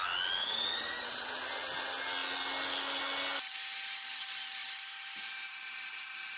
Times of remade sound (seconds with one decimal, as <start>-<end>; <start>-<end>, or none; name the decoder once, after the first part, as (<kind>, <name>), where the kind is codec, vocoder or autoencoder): 0.4-1.3 (vocoder, WaveNeXt)